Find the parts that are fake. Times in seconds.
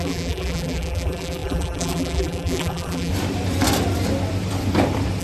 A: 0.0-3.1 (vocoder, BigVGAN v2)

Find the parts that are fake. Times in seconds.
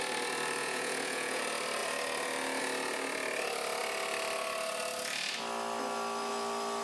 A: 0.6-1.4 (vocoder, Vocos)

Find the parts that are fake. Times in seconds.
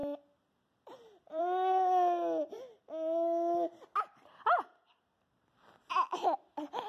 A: 0.0-1.4 (vocoder, BigVGAN v2)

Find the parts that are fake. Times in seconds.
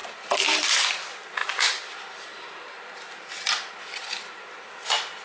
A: 0.0-0.9 (vocoder, BigVGAN v2); 1.4-3.3; 4.0-5.2